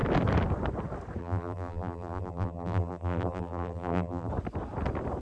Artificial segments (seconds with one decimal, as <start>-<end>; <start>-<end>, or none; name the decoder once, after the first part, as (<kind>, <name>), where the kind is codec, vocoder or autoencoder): 1.2-4.3 (vocoder, BigVGAN v2)

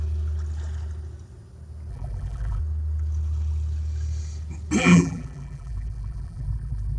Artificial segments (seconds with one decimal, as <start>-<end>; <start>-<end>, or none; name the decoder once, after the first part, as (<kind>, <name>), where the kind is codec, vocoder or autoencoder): 1.9-2.6 (vocoder, BigVGAN v2); 4.8-7.0

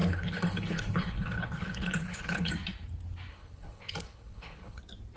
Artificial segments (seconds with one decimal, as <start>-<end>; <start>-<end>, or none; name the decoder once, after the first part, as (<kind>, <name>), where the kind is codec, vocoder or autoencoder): 0.0-2.5 (codec, HILCodec); 3.3-4.8

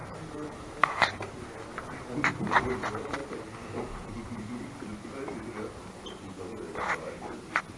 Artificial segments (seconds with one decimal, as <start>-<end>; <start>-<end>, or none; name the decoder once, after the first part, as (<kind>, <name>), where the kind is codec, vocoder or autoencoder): 0.0-1.1 (vocoder, BigVGAN v2)

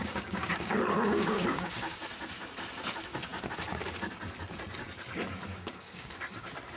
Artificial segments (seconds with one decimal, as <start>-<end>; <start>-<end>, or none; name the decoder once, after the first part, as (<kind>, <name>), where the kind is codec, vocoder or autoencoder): 0.0-2.0 (codec, DAC); 5.5-6.1